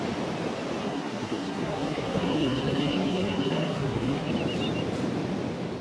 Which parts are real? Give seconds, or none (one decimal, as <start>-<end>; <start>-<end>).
0.0-0.8; 4.3-5.8